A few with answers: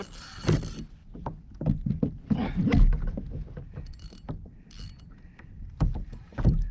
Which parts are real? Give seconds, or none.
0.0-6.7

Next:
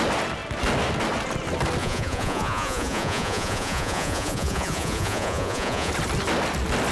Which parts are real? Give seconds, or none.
0.0-1.8; 5.9-6.9